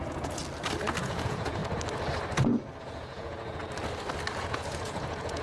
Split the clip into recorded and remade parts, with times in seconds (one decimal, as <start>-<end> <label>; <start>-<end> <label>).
0.0-0.4 remade; 0.4-1.0 recorded; 1.0-1.6 remade; 1.6-2.8 recorded; 2.8-3.6 remade; 3.6-4.4 recorded; 4.4-5.4 remade